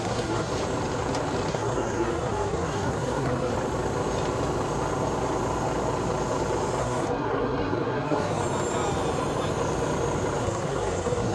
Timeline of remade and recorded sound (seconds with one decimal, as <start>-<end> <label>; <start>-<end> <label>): 0.0-0.5 remade; 0.5-1.5 recorded; 1.5-3.5 remade; 3.5-6.8 recorded; 6.8-8.4 remade; 8.4-10.4 recorded; 10.4-11.3 remade